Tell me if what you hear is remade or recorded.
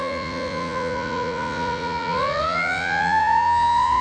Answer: remade